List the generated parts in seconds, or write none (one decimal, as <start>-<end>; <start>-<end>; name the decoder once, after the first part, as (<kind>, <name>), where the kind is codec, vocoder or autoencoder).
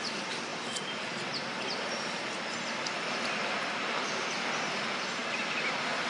5.2-6.1 (vocoder, BigVGAN v2)